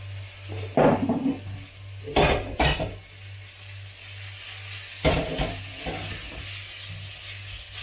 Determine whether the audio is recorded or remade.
recorded